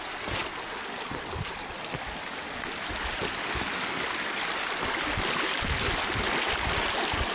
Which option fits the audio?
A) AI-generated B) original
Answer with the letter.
B